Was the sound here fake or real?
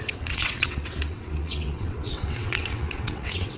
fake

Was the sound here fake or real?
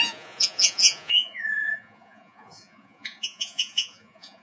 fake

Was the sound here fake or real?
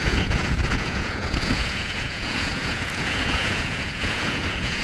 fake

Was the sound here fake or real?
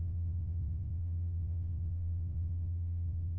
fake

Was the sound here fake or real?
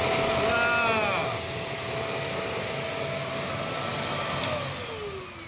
real